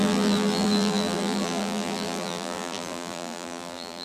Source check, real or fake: fake